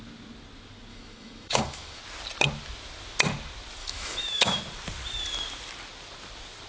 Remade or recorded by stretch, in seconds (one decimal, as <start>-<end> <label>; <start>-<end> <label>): 0.0-0.9 recorded; 0.9-2.0 remade; 2.0-3.8 recorded; 3.8-4.6 remade; 4.6-6.7 recorded